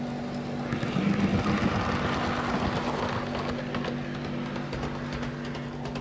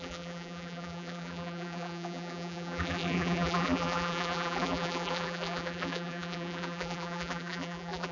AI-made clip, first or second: second